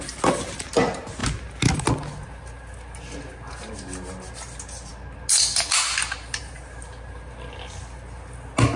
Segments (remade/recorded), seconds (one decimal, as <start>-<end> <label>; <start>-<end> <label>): 0.0-8.8 recorded